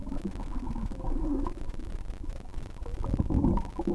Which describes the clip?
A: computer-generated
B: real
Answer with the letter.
B